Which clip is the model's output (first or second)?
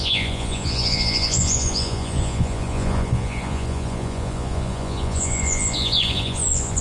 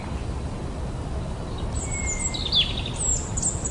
first